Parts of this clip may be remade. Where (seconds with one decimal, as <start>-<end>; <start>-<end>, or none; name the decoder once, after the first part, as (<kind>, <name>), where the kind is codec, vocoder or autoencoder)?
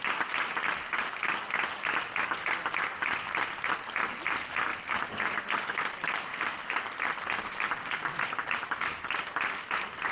none